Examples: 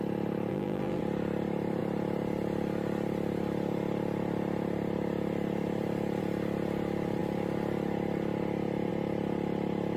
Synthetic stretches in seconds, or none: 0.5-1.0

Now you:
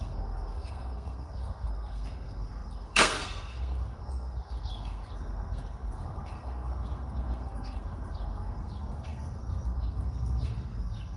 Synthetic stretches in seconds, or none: 0.0-11.2

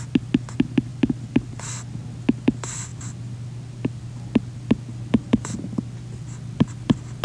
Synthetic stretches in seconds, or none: none

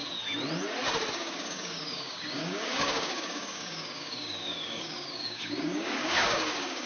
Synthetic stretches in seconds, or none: 1.1-6.9

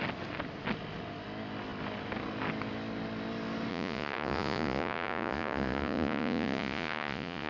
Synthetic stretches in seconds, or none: 3.7-7.5

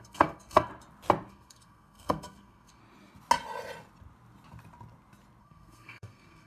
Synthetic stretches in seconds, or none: 0.0-0.7; 1.3-2.8; 5.4-6.5

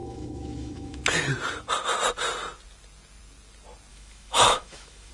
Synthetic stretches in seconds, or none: 0.0-1.0; 3.9-5.1

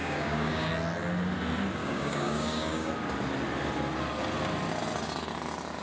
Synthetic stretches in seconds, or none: 0.0-0.7; 1.8-2.9